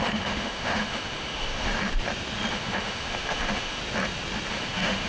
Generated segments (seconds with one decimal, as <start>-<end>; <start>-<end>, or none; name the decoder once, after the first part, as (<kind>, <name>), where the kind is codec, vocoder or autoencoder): 0.0-1.7 (autoencoder, DAC-VAE); 2.5-3.8; 4.5-5.1